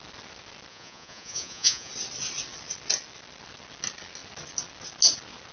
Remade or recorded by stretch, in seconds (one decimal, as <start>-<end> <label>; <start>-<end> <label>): 0.0-0.7 recorded; 0.7-1.9 remade; 1.9-5.5 recorded